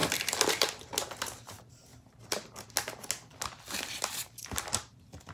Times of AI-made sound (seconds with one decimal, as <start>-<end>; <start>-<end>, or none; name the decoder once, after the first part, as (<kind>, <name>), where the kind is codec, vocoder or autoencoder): 0.5-0.9 (vocoder, BigVGAN v2); 1.5-1.9; 3.8-5.3